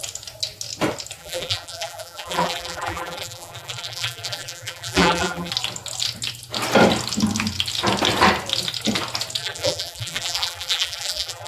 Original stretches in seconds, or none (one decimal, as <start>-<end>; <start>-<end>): 0.0-1.2; 5.5-9.4